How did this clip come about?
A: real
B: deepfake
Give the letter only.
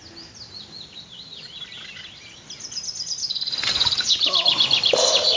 A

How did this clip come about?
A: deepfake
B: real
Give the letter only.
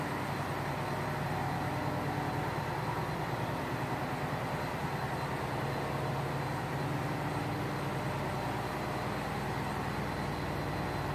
B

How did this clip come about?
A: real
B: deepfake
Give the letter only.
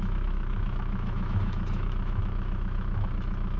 B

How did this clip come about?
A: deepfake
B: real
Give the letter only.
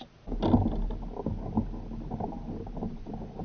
B